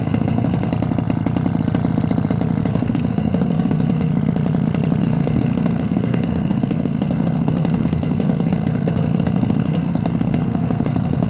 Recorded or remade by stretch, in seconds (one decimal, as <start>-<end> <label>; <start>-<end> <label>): 0.0-0.7 remade; 0.7-2.7 recorded; 2.7-4.1 remade; 4.1-5.0 recorded; 5.0-11.3 remade